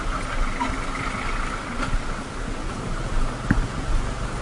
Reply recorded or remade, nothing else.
recorded